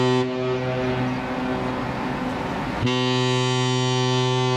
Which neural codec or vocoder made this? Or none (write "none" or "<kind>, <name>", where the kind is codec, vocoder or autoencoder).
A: none